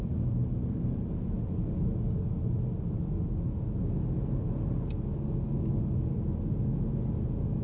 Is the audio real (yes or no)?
yes